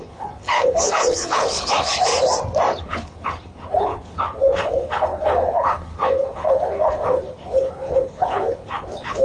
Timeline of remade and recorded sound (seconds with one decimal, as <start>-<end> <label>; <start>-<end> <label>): 0.0-2.1 remade; 2.1-2.8 recorded; 2.8-9.2 remade